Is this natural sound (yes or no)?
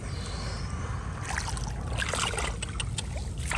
yes